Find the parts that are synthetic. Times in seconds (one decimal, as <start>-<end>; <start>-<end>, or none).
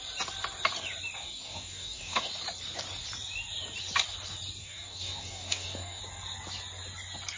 1.2-2.3; 4.6-6.0